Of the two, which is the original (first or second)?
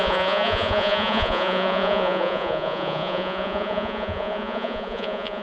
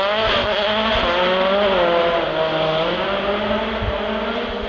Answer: second